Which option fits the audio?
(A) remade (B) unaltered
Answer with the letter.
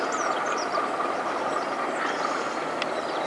B